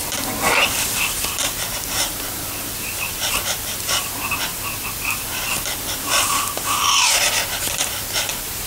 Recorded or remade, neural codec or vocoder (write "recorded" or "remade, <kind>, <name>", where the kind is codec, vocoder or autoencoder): remade, vocoder, BigVGAN v2